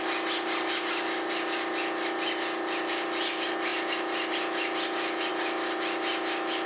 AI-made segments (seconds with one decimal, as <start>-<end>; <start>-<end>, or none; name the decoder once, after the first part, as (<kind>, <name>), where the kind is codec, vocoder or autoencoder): none